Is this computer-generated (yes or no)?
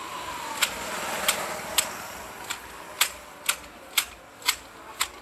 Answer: no